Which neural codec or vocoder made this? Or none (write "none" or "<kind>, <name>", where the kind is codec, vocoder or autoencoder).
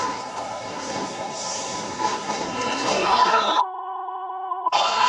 codec, SNAC